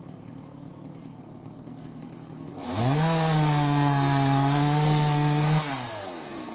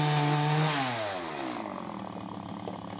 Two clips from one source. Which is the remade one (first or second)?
first